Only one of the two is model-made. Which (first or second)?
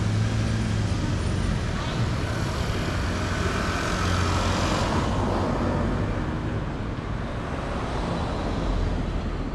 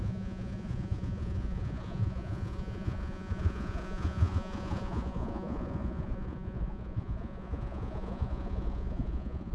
second